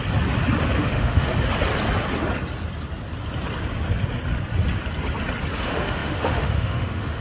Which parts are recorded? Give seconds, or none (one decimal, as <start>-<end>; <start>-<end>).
0.0-0.8; 1.3-5.6